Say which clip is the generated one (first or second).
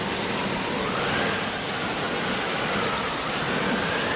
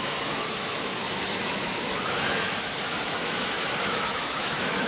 second